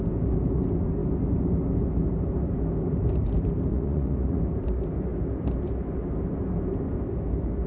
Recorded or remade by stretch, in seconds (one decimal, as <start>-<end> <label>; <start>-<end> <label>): 0.0-3.7 recorded; 3.7-4.4 remade; 4.4-7.7 recorded